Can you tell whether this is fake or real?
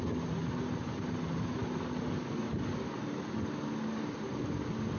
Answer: real